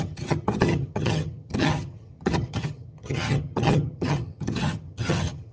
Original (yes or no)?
no